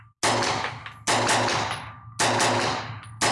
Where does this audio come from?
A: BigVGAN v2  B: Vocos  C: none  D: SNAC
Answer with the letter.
C